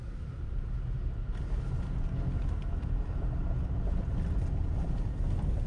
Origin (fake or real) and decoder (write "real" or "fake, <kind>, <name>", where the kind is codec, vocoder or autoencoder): real